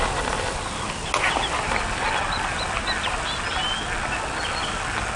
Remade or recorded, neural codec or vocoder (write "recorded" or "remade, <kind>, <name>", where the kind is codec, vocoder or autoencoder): recorded